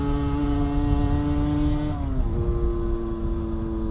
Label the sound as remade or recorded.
recorded